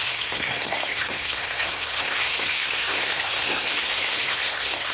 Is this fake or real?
fake